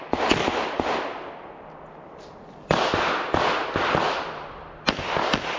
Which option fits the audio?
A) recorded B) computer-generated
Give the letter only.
A